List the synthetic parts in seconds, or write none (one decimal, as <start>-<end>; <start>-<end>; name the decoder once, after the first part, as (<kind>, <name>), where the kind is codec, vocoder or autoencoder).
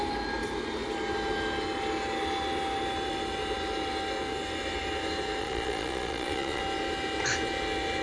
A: 5.4-6.6 (vocoder, Vocos)